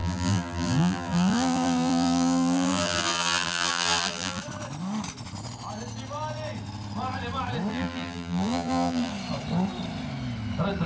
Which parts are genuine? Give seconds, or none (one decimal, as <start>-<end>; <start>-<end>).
4.4-7.7; 9.1-10.9